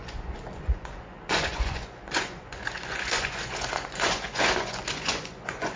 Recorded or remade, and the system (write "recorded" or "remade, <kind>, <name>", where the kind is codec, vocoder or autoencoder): remade, vocoder, Vocos